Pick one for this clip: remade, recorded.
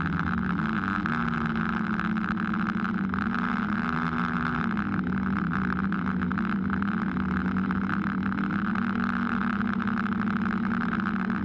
recorded